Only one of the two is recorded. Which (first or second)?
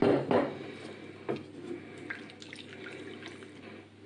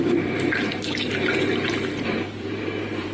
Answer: first